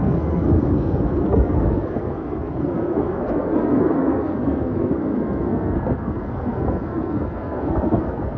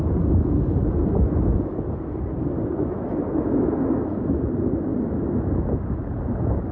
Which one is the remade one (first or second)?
first